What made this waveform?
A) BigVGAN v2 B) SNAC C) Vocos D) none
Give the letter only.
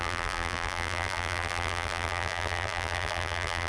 A